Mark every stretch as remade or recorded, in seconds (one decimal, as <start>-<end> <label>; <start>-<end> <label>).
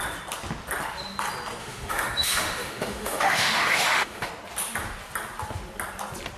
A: 0.0-1.6 recorded; 1.6-4.3 remade; 4.3-6.4 recorded